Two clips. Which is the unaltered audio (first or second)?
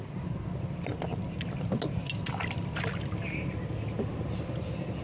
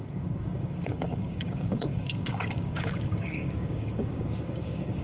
first